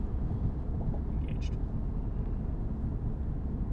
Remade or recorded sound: recorded